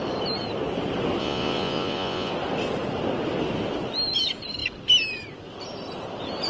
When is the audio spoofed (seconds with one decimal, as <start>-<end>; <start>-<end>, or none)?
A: 1.2-2.3